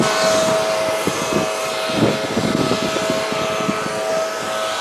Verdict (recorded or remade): recorded